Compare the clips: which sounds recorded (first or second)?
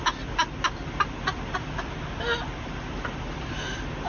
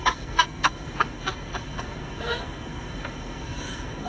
first